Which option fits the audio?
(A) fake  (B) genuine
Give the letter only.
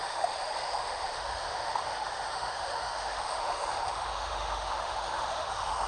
A